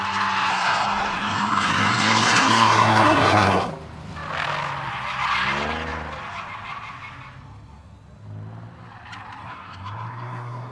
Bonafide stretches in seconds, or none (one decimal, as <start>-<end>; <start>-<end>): 0.0-0.5; 3.7-9.4